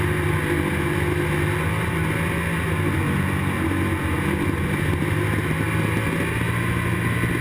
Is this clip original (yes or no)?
yes